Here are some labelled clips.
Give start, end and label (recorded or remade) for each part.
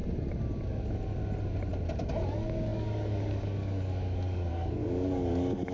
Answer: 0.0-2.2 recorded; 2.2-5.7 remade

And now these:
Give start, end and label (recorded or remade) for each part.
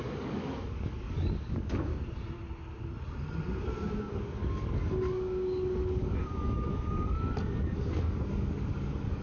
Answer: 0.0-1.9 remade; 1.9-4.0 recorded; 4.0-9.2 remade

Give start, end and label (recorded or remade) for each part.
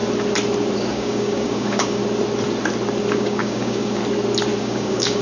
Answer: 0.0-0.9 recorded; 0.9-2.0 remade; 2.0-3.1 recorded; 3.1-4.0 remade; 4.0-4.6 recorded; 4.6-5.2 remade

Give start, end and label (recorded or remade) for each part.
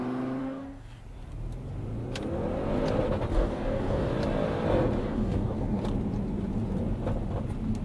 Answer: 0.0-0.4 recorded; 0.4-1.0 remade; 1.0-3.3 recorded; 3.3-4.1 remade; 4.1-5.0 recorded; 5.0-5.8 remade; 5.8-7.8 recorded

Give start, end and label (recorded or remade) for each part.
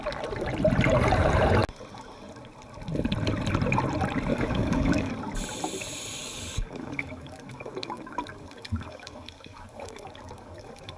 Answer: 0.0-4.3 recorded; 4.3-5.1 remade; 5.1-6.2 recorded; 6.2-11.0 remade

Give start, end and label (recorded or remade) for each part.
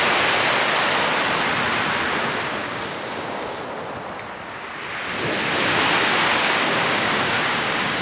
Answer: 0.0-2.6 recorded; 2.6-3.6 remade; 3.6-6.3 recorded; 6.3-8.0 remade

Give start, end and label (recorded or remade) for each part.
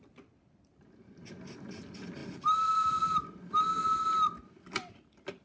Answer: 0.0-5.4 recorded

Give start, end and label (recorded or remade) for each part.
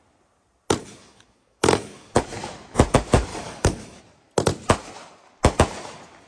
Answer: 0.0-0.8 recorded; 0.8-2.2 remade; 2.2-3.3 recorded; 3.3-4.0 remade; 4.0-6.3 recorded